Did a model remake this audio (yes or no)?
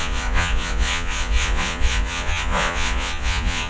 yes